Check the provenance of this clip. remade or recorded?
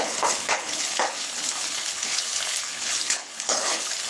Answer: remade